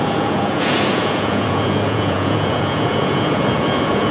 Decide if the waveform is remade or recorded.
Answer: remade